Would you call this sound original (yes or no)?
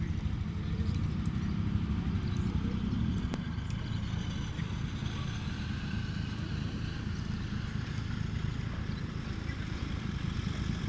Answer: yes